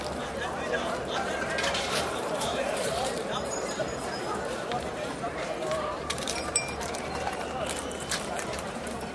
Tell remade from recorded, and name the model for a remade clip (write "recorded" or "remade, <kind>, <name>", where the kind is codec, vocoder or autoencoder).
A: remade, vocoder, BigVGAN v2